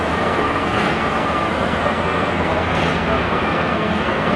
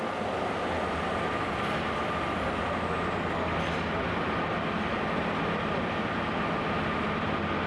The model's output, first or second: first